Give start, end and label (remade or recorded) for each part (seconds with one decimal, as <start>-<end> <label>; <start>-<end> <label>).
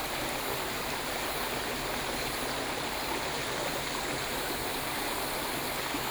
0.0-6.1 recorded